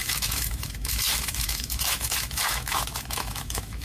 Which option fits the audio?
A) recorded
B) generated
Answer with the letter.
B